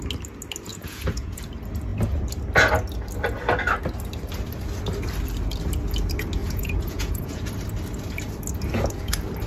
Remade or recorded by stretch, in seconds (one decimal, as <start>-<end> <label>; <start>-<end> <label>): 0.0-0.7 recorded; 0.7-1.4 remade; 1.4-6.4 recorded; 6.4-7.5 remade; 7.5-9.5 recorded